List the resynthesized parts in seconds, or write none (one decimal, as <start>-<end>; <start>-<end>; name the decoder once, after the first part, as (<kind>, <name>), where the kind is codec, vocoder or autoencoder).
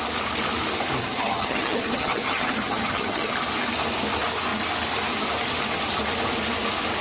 1.0-3.3 (vocoder, HiFi-GAN)